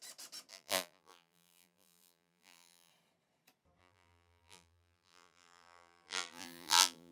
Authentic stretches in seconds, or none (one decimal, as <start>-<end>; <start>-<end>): 0.0-0.5; 2.9-3.8